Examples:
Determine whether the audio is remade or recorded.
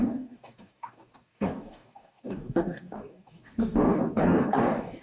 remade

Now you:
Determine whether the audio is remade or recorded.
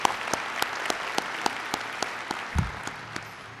recorded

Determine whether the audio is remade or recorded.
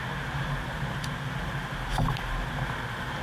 recorded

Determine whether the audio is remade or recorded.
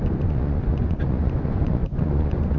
remade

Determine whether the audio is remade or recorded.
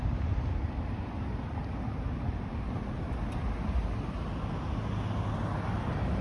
recorded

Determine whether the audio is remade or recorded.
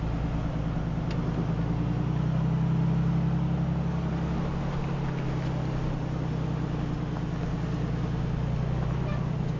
recorded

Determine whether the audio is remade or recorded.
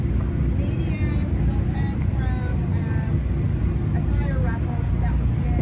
recorded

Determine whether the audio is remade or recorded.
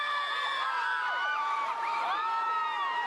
recorded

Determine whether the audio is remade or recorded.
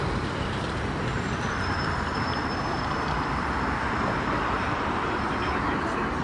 remade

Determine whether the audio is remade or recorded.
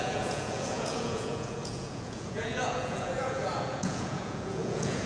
remade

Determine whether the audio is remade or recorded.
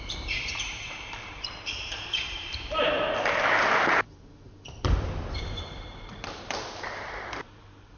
remade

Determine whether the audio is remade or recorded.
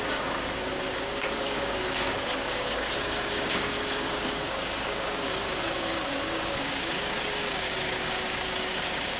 remade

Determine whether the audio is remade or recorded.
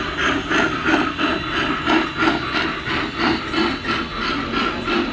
recorded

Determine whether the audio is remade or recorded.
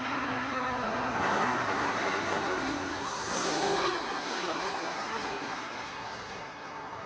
remade